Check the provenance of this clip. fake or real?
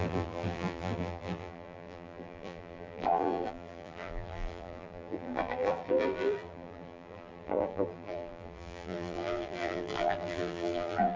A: fake